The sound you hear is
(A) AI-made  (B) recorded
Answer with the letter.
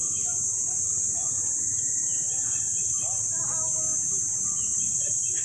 A